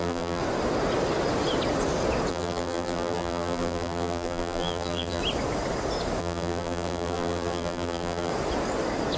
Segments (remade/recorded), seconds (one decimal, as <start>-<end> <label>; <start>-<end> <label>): 0.0-0.4 remade; 0.4-2.3 recorded; 2.3-5.2 remade; 5.2-6.2 recorded; 6.2-8.3 remade; 8.3-9.2 recorded